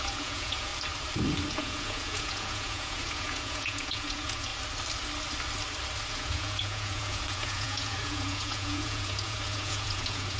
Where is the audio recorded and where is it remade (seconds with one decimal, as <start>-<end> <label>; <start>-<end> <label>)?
0.0-0.7 remade; 0.7-1.5 recorded; 1.5-4.5 remade; 4.5-6.1 recorded; 6.1-10.4 remade